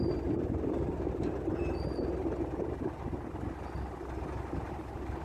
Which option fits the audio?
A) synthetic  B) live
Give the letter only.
B